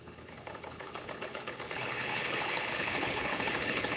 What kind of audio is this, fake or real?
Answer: fake